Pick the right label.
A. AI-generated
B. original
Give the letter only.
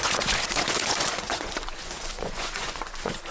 A